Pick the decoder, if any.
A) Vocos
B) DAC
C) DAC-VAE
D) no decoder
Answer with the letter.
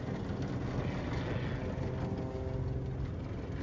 D